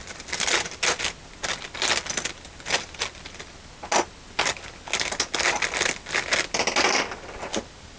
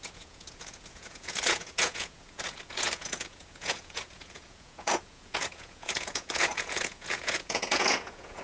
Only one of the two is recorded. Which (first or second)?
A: first